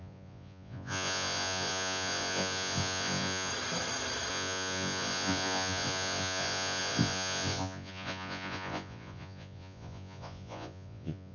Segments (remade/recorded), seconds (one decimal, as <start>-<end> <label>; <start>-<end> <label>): 0.0-3.5 remade; 3.5-4.3 recorded; 4.3-11.3 remade